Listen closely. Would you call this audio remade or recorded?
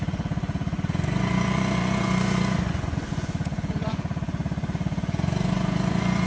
remade